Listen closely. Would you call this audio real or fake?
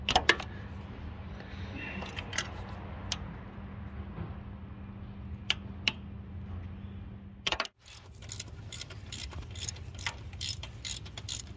real